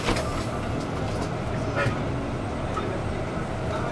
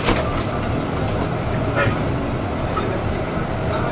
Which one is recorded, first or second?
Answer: first